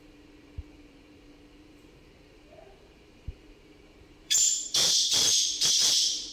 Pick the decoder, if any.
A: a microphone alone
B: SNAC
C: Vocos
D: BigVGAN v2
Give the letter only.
D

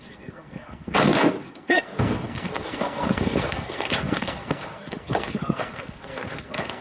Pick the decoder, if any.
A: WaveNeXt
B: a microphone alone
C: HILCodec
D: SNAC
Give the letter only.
D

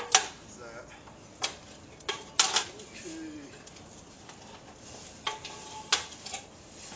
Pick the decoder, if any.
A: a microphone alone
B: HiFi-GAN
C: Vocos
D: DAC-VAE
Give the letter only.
A